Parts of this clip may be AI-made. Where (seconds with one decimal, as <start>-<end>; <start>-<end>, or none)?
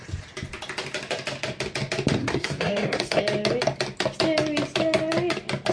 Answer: 2.2-3.2